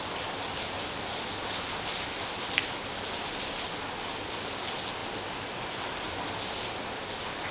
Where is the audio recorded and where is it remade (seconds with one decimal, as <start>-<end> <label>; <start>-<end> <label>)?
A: 0.0-7.5 recorded